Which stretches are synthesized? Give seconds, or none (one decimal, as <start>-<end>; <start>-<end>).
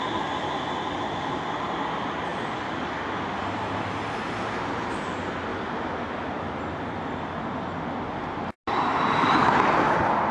none